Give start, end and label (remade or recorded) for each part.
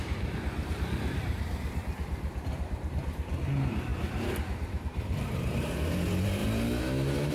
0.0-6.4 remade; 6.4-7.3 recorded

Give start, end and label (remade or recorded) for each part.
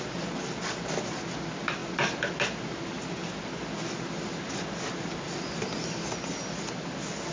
0.0-3.2 recorded; 3.2-4.9 remade; 4.9-7.3 recorded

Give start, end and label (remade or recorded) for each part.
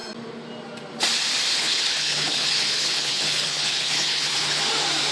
0.0-1.5 recorded; 1.5-4.6 remade; 4.6-5.1 recorded